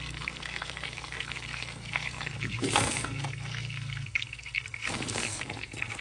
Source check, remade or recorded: remade